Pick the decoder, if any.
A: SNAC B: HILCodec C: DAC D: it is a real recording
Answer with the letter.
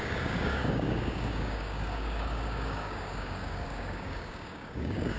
C